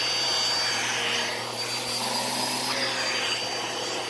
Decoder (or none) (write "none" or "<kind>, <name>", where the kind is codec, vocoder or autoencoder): none